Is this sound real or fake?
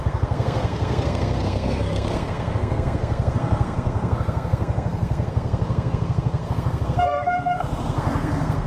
fake